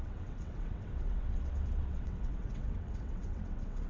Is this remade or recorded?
remade